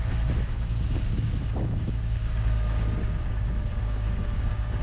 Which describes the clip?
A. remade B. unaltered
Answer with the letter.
A